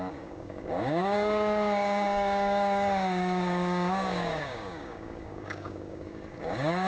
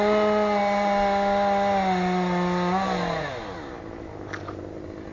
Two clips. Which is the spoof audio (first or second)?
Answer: first